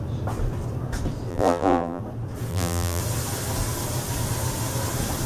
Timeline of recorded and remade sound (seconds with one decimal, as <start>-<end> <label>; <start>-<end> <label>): 0.0-1.3 recorded; 1.3-2.0 remade; 2.0-2.5 recorded; 2.5-3.0 remade; 3.0-5.3 recorded